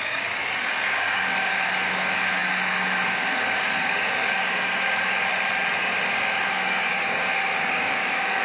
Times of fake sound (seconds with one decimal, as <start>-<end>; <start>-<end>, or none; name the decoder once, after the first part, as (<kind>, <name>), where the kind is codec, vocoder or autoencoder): 0.0-5.3 (codec, DAC); 5.8-8.4